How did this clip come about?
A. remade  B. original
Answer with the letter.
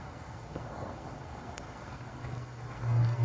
A